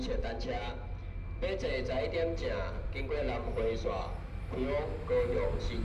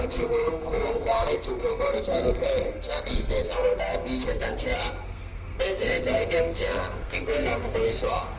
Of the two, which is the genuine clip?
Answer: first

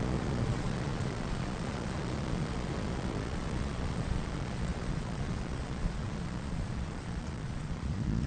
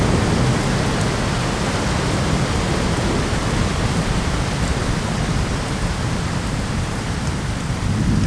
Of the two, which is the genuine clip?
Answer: second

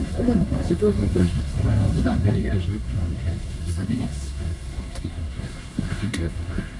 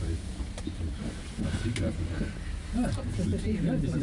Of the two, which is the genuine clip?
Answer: second